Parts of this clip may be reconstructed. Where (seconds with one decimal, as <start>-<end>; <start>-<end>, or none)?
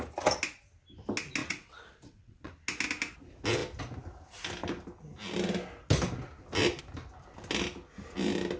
1.4-2.5